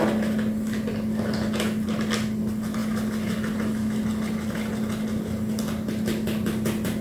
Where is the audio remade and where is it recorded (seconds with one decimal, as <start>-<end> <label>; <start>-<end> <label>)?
0.0-7.0 recorded